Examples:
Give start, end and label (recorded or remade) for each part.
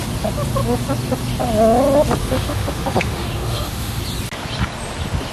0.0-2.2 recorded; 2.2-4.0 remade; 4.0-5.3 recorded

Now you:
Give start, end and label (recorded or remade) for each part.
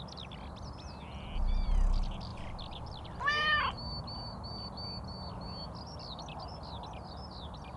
0.0-7.8 recorded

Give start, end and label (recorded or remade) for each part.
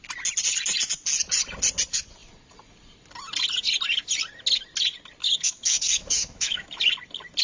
0.0-5.2 recorded; 5.2-6.8 remade; 6.8-7.4 recorded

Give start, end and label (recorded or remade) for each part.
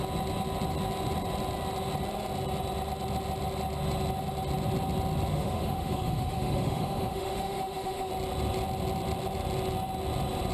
0.0-5.3 recorded; 5.3-8.1 remade; 8.1-10.5 recorded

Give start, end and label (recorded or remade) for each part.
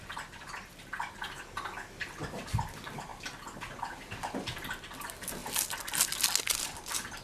0.0-7.2 recorded